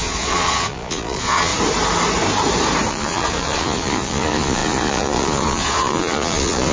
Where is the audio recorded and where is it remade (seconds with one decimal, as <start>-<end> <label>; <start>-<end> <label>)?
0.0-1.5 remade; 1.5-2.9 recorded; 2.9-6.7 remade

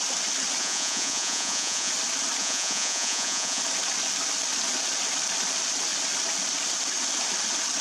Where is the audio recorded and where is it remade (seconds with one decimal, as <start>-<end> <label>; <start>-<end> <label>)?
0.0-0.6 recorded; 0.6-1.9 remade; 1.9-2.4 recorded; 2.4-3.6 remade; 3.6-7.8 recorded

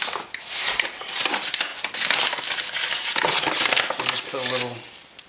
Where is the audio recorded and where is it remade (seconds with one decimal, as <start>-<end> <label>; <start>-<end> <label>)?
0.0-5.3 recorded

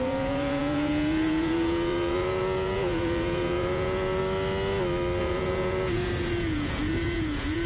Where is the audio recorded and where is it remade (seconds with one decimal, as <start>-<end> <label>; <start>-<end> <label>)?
0.0-4.2 remade; 4.2-5.2 recorded; 5.2-7.7 remade

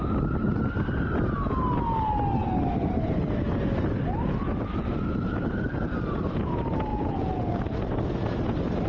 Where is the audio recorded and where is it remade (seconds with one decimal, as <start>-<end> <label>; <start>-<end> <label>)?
0.0-6.9 recorded; 6.9-7.6 remade; 7.6-8.9 recorded